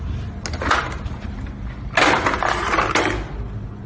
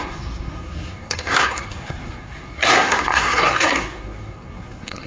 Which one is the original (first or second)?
first